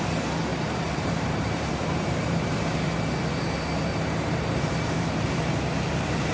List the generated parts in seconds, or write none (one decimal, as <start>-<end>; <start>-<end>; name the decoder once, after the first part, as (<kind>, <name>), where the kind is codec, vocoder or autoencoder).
0.5-2.9 (vocoder, BigVGAN v2); 3.9-5.1